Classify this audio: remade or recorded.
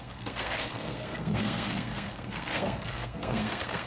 remade